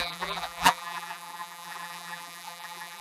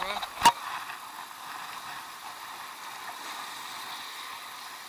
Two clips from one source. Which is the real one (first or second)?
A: second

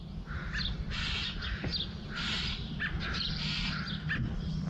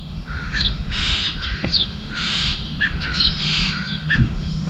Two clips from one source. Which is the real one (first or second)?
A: first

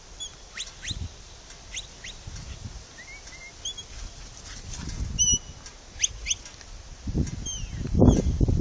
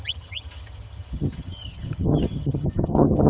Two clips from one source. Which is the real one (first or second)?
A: first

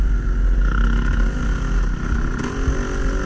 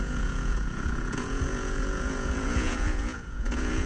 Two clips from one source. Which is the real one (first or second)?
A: first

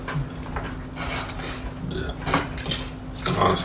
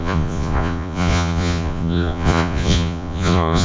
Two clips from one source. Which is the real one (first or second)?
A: first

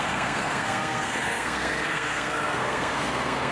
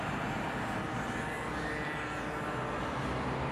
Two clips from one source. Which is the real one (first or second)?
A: second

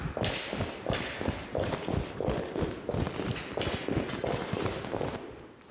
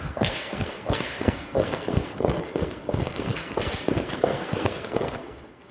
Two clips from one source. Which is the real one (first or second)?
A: first